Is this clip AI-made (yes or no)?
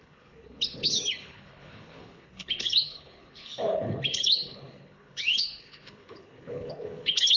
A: yes